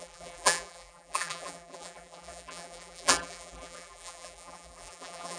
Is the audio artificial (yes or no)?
yes